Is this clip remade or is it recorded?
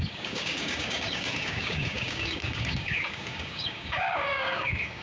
remade